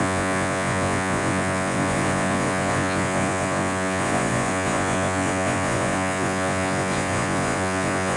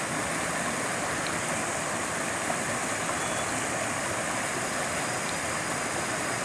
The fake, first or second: first